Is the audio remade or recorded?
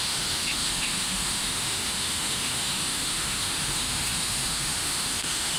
remade